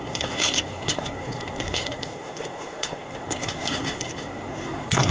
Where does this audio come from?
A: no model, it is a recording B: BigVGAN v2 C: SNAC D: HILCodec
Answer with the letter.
C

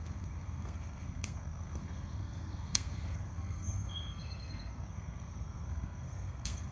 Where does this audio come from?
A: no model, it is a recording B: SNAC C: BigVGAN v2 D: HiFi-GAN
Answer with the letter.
B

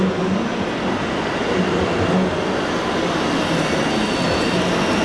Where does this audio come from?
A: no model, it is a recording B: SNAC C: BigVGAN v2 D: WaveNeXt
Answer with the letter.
A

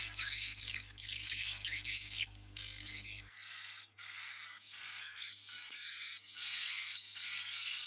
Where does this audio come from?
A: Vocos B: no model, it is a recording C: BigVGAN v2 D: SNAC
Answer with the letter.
D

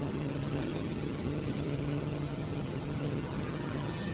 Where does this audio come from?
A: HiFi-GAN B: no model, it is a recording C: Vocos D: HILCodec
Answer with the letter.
A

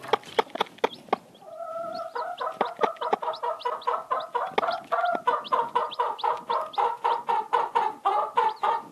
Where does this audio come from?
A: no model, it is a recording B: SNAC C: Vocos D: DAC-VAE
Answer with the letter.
A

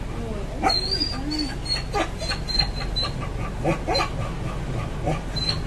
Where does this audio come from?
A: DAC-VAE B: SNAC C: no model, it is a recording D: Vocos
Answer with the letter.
C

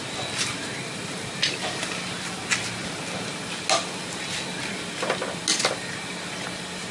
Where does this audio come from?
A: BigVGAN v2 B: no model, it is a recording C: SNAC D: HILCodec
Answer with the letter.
B